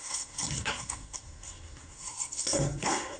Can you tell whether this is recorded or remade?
remade